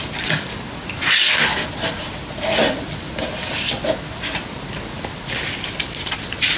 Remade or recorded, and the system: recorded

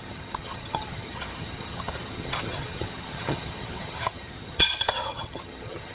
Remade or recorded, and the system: remade, vocoder, HiFi-GAN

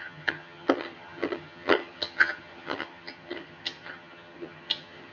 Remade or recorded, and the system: remade, vocoder, HiFi-GAN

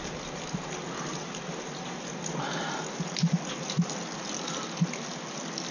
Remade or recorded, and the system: recorded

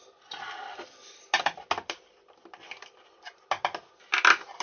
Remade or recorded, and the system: recorded